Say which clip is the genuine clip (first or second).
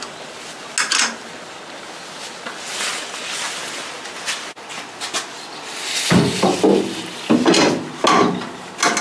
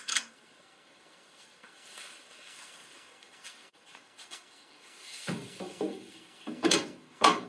first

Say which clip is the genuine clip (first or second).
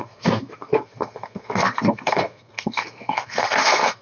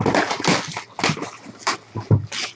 second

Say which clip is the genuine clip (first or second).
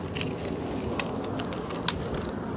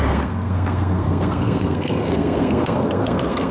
first